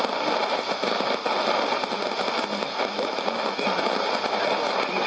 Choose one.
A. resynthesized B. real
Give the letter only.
B